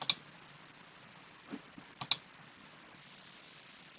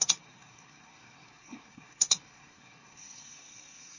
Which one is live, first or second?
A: first